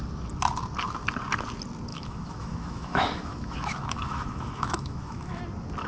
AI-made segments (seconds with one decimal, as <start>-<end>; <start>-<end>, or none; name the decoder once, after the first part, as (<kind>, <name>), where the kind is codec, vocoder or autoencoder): 1.9-5.4 (autoencoder, DAC-VAE)